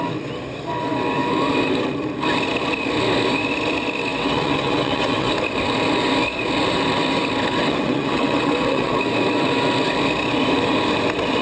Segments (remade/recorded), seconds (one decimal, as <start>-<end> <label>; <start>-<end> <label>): 0.0-4.1 recorded; 4.1-5.3 remade; 5.3-7.6 recorded; 7.6-8.9 remade; 8.9-11.4 recorded